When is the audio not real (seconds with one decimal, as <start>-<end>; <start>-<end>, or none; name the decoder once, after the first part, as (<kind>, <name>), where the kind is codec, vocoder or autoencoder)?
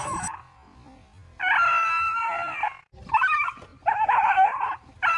none